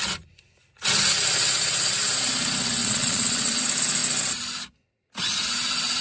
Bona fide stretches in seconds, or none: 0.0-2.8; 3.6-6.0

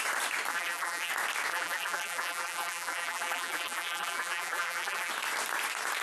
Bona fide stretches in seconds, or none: 0.0-0.5; 1.1-1.5; 5.1-6.0